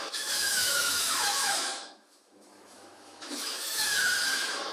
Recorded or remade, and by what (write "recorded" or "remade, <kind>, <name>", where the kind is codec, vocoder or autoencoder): remade, autoencoder, DAC-VAE